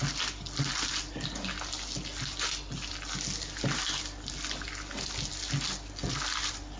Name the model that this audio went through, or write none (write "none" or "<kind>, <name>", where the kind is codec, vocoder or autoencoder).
none